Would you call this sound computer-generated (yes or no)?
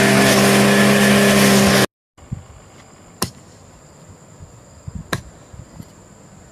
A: no